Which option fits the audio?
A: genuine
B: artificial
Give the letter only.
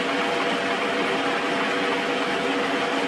A